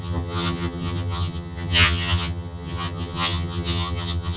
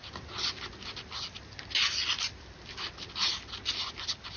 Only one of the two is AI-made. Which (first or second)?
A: first